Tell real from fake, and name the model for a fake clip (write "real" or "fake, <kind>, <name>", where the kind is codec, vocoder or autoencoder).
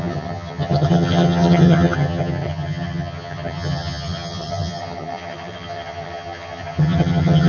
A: fake, vocoder, HiFi-GAN